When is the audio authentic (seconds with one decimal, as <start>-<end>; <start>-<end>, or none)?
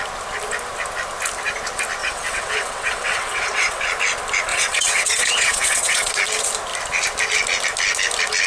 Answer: 0.0-2.0; 3.8-4.5; 6.1-8.5